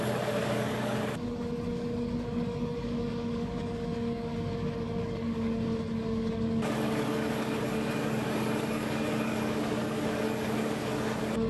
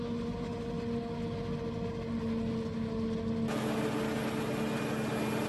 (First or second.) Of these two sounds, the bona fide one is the second